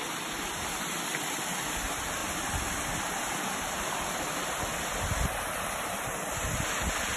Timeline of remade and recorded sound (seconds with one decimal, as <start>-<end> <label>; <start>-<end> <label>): 0.0-7.2 recorded